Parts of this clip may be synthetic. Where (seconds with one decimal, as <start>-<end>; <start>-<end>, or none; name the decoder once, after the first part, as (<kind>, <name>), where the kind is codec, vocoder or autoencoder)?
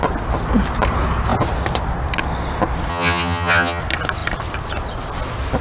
2.9-3.8 (vocoder, HiFi-GAN)